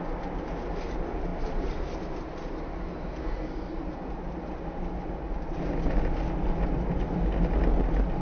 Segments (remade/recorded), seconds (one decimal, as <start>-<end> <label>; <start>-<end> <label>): 0.0-3.2 recorded; 3.2-3.7 remade; 3.7-8.2 recorded